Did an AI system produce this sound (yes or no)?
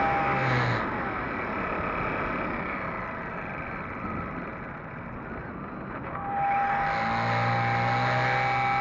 no